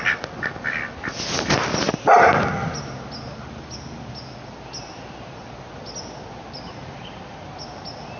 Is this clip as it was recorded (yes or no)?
yes